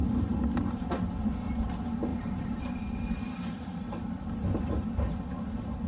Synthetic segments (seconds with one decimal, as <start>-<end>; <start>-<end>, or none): 2.1-4.3